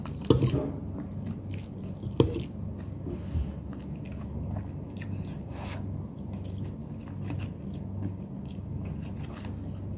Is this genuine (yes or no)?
yes